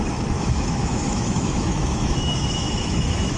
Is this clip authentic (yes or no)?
no